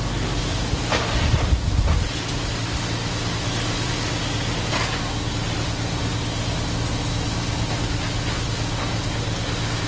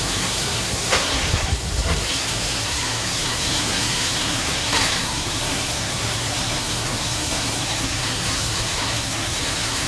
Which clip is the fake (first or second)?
second